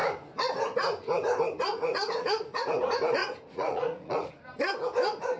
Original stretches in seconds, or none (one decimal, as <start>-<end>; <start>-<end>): 0.0-3.2; 4.3-5.4